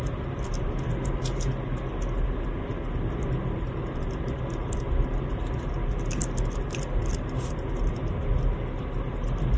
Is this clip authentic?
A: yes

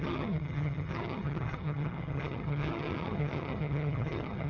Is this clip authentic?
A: no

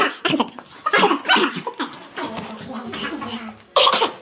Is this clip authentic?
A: yes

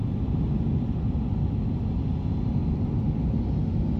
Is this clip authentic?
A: yes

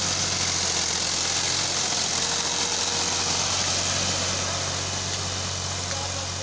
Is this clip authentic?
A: yes